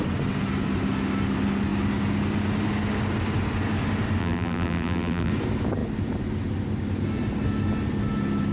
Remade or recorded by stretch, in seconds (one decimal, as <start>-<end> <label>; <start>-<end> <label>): 0.0-4.2 recorded; 4.2-5.3 remade; 5.3-8.5 recorded